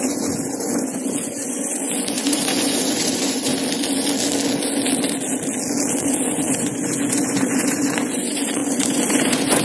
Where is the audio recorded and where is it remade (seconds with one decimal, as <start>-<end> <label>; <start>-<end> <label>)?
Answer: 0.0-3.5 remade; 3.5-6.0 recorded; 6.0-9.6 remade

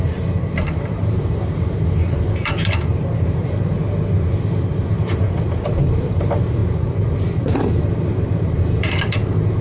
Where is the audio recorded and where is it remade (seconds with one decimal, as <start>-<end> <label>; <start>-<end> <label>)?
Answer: 0.0-3.8 remade; 3.8-4.9 recorded; 4.9-9.6 remade

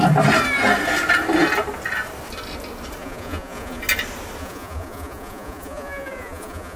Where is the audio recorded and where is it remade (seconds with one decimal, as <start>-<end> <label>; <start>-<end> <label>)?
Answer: 0.0-3.0 recorded; 3.0-3.8 remade; 3.8-4.4 recorded; 4.4-6.8 remade

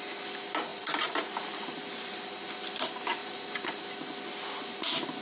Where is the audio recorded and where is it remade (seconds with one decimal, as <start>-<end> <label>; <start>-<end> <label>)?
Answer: 0.0-0.7 recorded; 0.7-2.4 remade; 2.4-3.2 recorded; 3.2-3.8 remade; 3.8-5.2 recorded

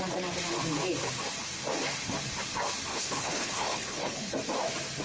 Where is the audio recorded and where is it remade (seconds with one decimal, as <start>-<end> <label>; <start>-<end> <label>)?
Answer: 0.0-2.9 recorded; 2.9-4.3 remade; 4.3-5.0 recorded

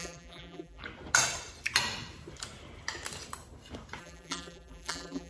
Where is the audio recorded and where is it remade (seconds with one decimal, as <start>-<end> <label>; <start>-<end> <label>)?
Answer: 0.0-0.8 remade; 0.8-4.0 recorded; 4.0-5.3 remade

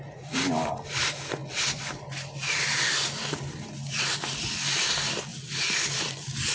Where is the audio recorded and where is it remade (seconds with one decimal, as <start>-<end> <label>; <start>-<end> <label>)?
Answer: 0.0-6.5 recorded

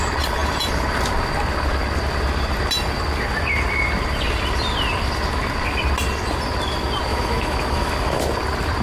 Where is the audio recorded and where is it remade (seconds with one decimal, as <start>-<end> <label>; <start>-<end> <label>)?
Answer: 0.0-7.1 recorded; 7.1-8.2 remade; 8.2-8.8 recorded